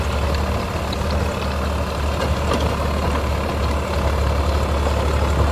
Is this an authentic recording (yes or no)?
yes